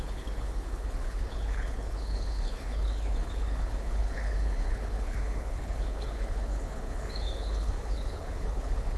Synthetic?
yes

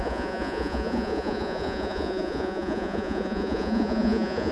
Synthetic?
yes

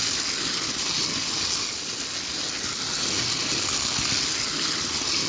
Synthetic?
no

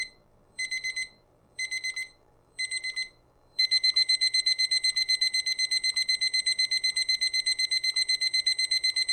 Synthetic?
yes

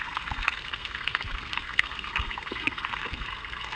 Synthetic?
yes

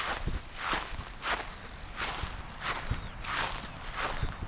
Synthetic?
no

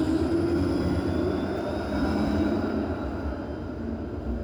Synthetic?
no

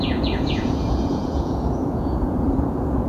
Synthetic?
yes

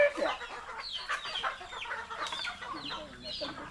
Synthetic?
no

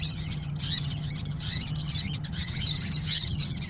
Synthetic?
yes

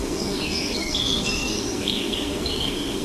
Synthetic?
yes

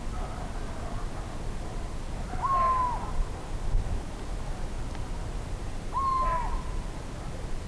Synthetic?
no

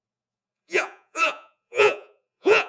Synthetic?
yes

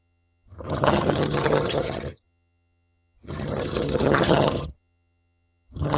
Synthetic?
yes